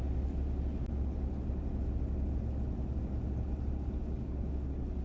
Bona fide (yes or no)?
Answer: yes